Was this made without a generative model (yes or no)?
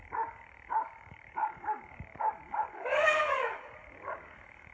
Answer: no